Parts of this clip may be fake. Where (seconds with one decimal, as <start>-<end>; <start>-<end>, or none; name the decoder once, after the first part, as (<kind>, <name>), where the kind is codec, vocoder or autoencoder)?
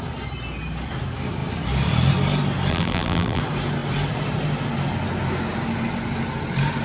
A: 2.7-3.4 (vocoder, BigVGAN v2)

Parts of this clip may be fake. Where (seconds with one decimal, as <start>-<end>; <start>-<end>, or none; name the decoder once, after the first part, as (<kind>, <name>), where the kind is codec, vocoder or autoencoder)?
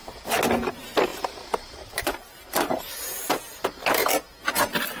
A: 1.1-4.1 (vocoder, BigVGAN v2)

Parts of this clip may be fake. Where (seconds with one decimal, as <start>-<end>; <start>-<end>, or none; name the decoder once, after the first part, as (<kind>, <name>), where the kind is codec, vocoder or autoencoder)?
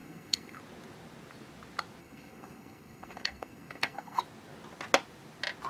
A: 0.0-0.6 (codec, SNAC); 2.0-4.2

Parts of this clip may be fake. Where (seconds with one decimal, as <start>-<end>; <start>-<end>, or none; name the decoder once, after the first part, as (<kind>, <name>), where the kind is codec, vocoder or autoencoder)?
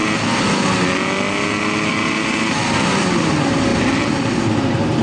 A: 2.7-5.0 (vocoder, BigVGAN v2)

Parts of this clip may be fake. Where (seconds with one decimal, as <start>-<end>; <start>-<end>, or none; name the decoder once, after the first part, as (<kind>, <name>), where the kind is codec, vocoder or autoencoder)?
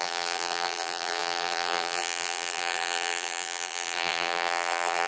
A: 0.0-5.1 (vocoder, BigVGAN v2)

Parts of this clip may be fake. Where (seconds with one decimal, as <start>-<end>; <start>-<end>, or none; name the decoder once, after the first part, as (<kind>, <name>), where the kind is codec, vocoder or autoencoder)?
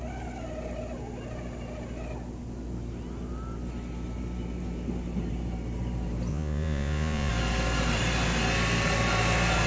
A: 6.3-7.3 (vocoder, Vocos)